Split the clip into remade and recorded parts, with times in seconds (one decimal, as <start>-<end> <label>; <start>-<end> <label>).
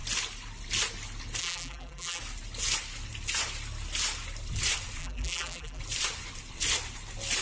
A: 0.0-1.4 recorded; 1.4-2.2 remade; 2.2-5.0 recorded; 5.0-5.8 remade; 5.8-7.4 recorded